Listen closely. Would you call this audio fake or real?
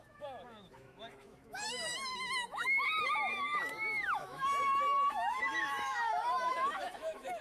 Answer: fake